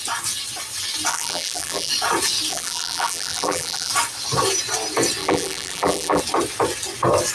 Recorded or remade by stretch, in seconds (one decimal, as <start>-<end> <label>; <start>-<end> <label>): 0.0-1.1 recorded; 1.1-1.9 remade; 1.9-2.5 recorded; 2.5-3.9 remade; 3.9-5.2 recorded; 5.2-6.2 remade; 6.2-7.3 recorded

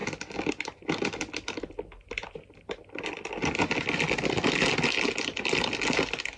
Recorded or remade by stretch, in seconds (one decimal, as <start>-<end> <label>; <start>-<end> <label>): 0.0-6.4 recorded

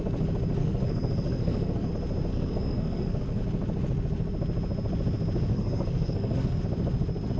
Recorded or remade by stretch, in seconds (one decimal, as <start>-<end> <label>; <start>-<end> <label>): 0.0-0.6 recorded; 0.6-1.9 remade; 1.9-2.3 recorded; 2.3-3.4 remade; 3.4-5.5 recorded; 5.5-6.6 remade; 6.6-7.4 recorded

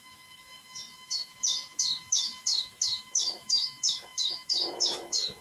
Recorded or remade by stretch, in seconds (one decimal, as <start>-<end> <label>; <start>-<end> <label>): 0.0-1.3 remade; 1.3-2.0 recorded; 2.0-5.4 remade

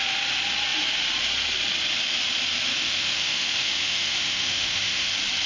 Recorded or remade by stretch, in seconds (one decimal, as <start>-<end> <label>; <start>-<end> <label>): 0.0-2.7 recorded; 2.7-5.1 remade; 5.1-5.5 recorded

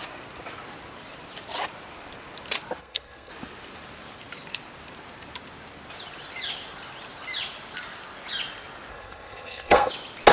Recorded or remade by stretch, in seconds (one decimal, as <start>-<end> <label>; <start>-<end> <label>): 0.0-2.8 recorded; 2.8-3.3 remade; 3.3-8.9 recorded; 8.9-9.9 remade; 9.9-10.3 recorded

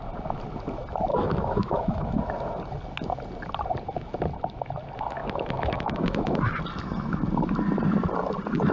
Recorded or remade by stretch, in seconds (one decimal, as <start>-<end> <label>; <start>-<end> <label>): 0.0-1.1 recorded; 1.1-2.2 remade; 2.2-5.2 recorded; 5.2-6.4 remade; 6.4-8.7 recorded

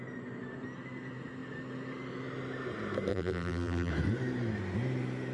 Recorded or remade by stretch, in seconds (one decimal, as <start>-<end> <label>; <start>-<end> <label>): 0.0-3.1 recorded; 3.1-3.9 remade; 3.9-5.3 recorded